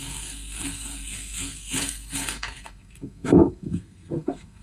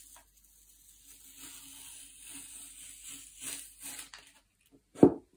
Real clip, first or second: second